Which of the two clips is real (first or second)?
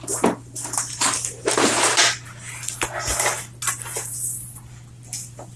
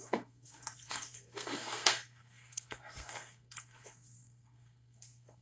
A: first